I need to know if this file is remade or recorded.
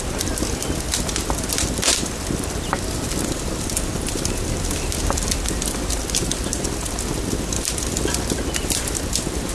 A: recorded